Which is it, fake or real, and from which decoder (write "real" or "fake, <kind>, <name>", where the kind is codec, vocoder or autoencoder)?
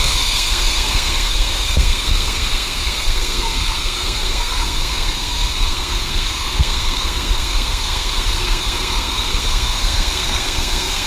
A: fake, codec, SNAC